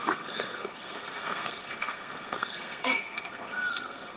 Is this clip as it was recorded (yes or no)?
no